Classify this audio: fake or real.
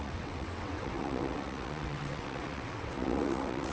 fake